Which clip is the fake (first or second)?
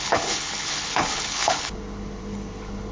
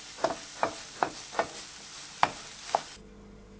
first